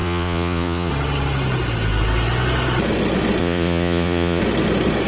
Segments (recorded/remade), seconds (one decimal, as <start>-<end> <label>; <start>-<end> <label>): 0.0-0.9 remade; 0.9-3.4 recorded; 3.4-4.4 remade; 4.4-5.1 recorded